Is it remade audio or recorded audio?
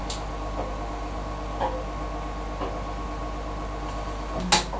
recorded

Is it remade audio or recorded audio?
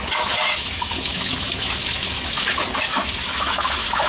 remade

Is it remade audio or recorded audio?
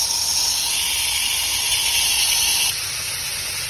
remade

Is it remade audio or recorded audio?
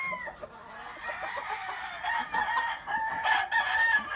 recorded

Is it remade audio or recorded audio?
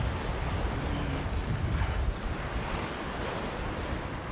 recorded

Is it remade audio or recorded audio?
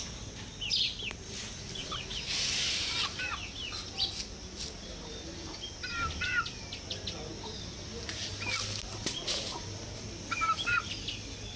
recorded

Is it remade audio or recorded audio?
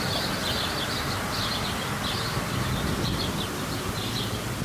remade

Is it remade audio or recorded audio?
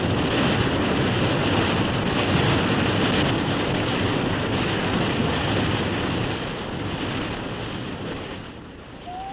recorded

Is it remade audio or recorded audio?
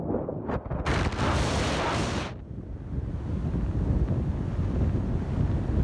recorded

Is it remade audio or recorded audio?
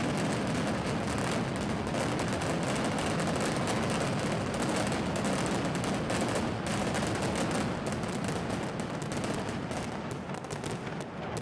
recorded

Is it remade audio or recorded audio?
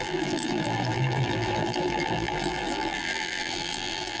remade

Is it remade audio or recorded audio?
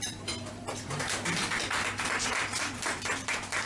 remade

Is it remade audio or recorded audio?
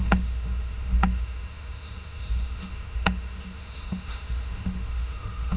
remade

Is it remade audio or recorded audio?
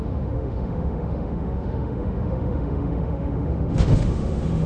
remade